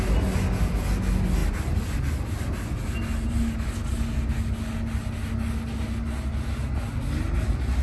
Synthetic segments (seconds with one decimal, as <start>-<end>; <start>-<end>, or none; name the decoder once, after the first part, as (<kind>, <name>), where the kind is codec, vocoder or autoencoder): none